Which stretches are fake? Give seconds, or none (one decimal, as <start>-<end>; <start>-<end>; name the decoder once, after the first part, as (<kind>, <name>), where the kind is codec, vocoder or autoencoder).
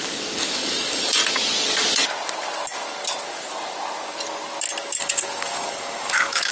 0.0-1.2 (codec, DAC); 5.0-6.5